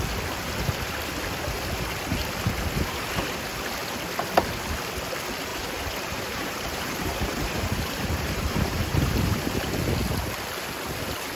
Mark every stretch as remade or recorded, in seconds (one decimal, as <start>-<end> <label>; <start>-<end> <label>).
0.0-5.5 recorded; 5.5-9.9 remade; 9.9-11.4 recorded